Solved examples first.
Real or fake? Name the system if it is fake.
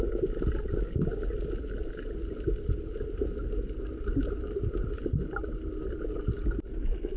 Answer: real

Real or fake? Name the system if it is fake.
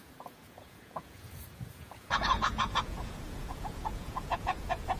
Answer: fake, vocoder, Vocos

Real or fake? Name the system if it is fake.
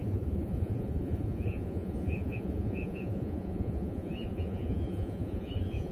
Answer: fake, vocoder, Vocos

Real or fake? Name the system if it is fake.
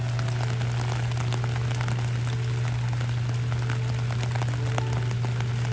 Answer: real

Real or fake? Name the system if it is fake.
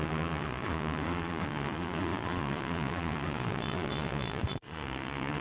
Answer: fake, vocoder, Vocos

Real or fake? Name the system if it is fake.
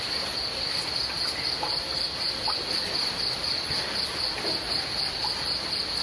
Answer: real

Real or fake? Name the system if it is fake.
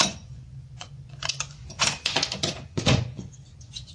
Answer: fake, vocoder, Vocos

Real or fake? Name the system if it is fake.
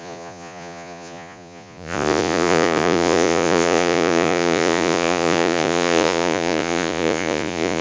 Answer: fake, vocoder, Vocos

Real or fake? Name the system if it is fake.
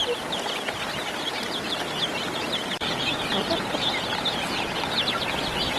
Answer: real